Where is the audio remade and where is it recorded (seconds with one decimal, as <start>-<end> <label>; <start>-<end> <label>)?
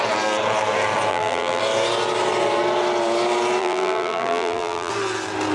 0.0-1.1 recorded; 1.1-1.6 remade; 1.6-3.6 recorded; 3.6-4.9 remade; 4.9-5.5 recorded